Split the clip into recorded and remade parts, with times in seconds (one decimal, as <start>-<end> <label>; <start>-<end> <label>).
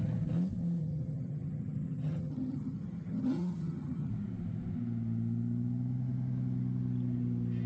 0.0-0.8 recorded; 0.8-4.1 remade; 4.1-7.7 recorded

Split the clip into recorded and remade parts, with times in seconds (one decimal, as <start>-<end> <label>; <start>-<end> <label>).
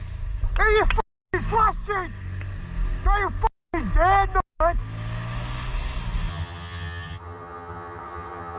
0.0-6.3 recorded; 6.3-8.6 remade